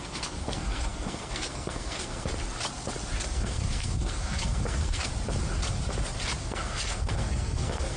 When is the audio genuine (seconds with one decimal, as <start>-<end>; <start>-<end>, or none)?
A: 2.3-3.3; 5.1-6.4